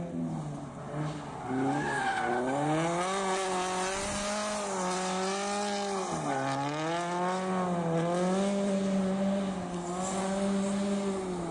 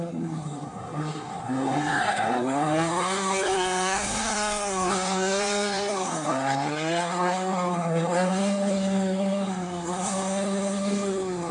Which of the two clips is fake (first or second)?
second